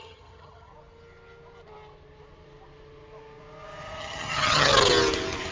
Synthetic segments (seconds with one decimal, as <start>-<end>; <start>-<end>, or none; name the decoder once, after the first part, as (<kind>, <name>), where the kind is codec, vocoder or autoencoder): 0.0-0.7 (vocoder, HiFi-GAN); 4.0-4.7